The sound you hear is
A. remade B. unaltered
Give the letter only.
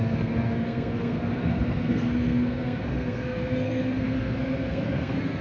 A